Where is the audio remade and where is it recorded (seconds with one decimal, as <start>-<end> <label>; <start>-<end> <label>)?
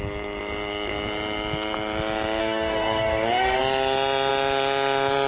0.0-2.4 recorded; 2.4-3.6 remade; 3.6-5.3 recorded